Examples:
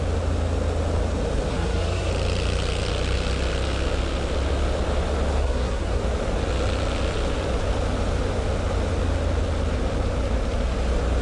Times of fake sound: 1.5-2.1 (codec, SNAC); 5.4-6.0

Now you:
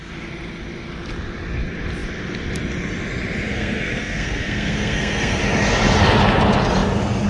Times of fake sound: 3.5-5.4 (codec, SNAC)

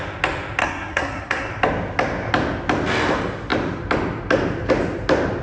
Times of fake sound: 0.6-1.5 (codec, SNAC)